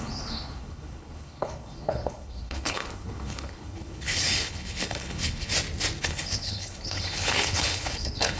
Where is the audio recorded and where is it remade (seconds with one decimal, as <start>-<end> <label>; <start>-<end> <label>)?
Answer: 0.0-5.5 remade; 5.5-6.0 recorded; 6.0-8.4 remade